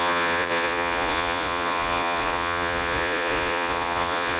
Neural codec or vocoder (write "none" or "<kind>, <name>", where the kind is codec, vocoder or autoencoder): vocoder, Vocos